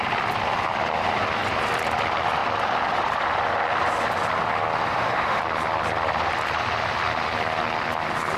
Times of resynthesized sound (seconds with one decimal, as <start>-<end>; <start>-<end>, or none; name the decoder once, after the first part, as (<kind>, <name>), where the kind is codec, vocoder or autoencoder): 4.9-5.4 (autoencoder, DAC-VAE)